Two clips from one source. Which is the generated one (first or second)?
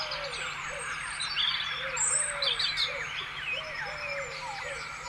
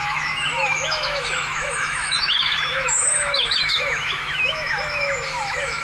second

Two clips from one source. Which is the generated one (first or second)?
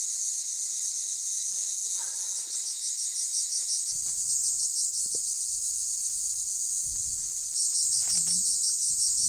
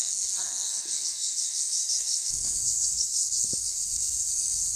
second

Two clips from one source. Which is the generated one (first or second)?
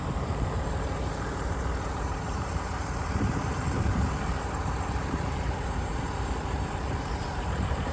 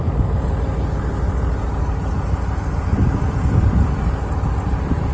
first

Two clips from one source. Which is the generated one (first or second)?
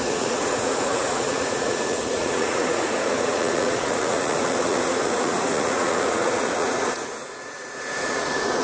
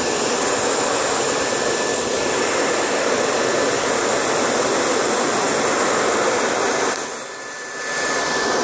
first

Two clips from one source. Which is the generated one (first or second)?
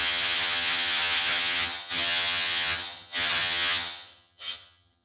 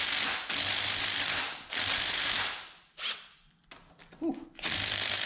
first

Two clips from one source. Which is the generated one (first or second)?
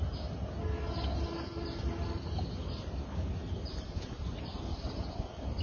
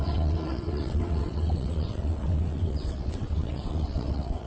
second